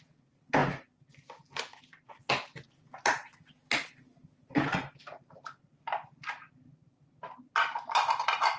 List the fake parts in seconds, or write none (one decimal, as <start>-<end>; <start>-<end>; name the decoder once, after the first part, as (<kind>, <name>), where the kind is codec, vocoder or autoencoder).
none